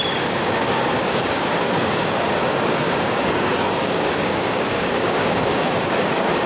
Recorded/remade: remade